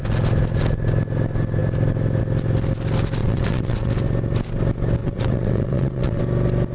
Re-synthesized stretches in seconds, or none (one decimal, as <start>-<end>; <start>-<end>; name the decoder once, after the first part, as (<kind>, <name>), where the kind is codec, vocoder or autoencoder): 3.2-3.9 (vocoder, WaveNeXt); 5.0-6.2